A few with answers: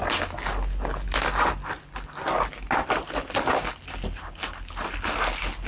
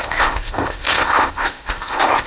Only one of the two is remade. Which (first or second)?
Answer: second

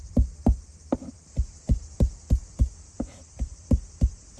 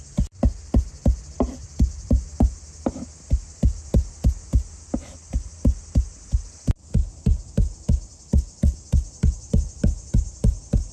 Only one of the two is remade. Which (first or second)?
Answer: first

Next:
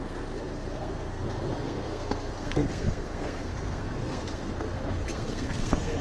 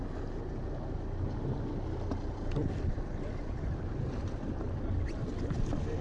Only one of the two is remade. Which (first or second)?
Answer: first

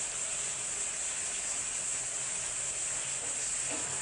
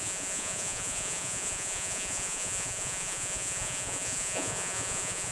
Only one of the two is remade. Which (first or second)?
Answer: second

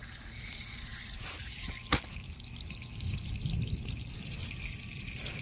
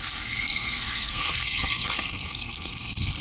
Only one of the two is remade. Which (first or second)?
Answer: second